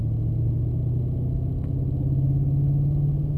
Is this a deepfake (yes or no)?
no